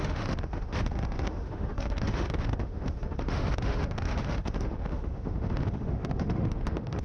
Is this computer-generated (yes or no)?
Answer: yes